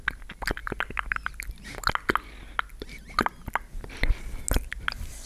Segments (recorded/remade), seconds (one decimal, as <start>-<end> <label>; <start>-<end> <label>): 0.0-5.3 recorded